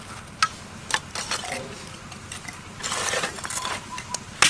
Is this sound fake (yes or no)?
no